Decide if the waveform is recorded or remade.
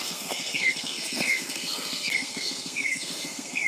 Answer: remade